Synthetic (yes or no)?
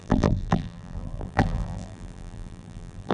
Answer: yes